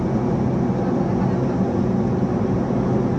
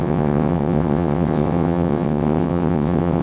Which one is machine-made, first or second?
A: second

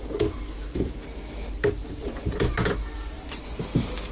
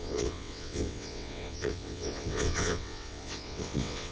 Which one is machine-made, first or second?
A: second